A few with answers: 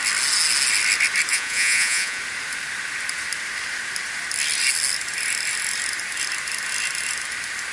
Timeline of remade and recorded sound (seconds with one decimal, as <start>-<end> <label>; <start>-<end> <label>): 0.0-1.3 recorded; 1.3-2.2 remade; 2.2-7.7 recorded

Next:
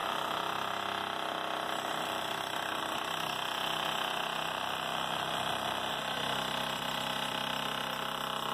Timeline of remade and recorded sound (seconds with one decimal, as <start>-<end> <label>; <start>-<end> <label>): 0.0-8.5 recorded

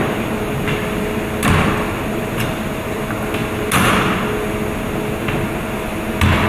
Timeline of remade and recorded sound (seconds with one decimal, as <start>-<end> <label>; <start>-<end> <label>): 0.0-6.5 recorded